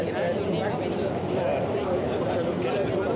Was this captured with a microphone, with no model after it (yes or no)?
yes